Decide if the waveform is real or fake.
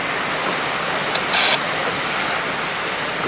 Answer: real